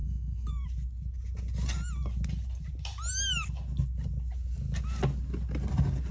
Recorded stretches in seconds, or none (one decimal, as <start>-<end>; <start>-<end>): 0.5-6.1